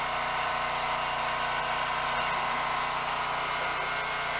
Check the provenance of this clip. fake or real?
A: real